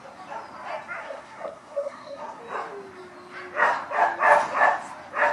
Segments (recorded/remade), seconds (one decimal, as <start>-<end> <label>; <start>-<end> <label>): 0.0-1.0 recorded; 1.0-2.4 remade; 2.4-5.3 recorded